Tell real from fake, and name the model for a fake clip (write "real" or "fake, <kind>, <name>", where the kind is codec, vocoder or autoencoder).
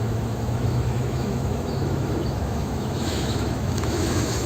fake, autoencoder, DAC-VAE